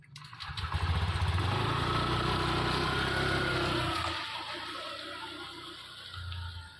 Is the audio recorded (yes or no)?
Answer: yes